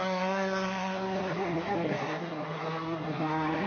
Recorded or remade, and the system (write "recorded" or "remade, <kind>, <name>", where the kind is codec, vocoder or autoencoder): remade, codec, SNAC